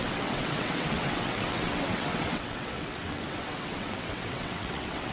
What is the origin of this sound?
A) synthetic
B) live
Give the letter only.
A